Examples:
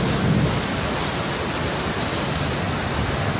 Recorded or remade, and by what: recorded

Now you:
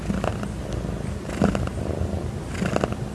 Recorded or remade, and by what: recorded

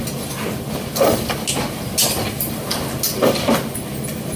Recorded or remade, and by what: recorded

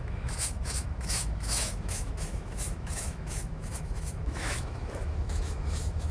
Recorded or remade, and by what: remade, autoencoder, DAC-VAE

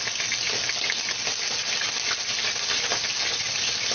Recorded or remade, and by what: recorded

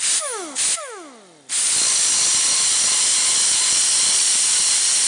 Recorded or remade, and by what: recorded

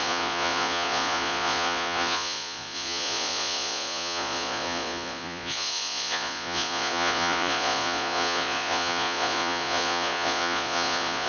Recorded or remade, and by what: remade, vocoder, Vocos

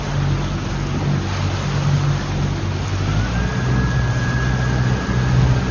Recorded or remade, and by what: recorded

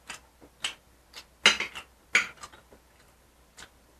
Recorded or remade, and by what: recorded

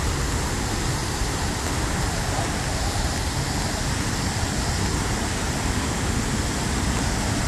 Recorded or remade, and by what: recorded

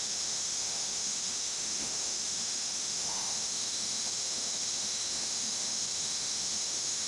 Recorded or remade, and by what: remade, autoencoder, DAC-VAE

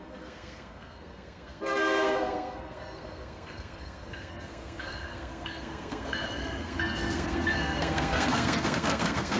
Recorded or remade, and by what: remade, codec, SNAC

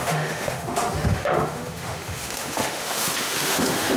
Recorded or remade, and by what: remade, autoencoder, DAC-VAE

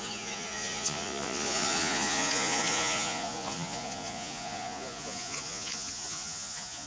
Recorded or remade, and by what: remade, vocoder, Vocos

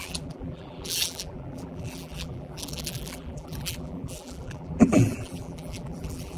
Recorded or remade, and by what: remade, vocoder, BigVGAN v2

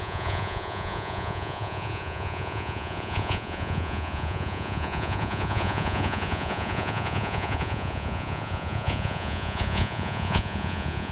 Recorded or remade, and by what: remade, vocoder, Vocos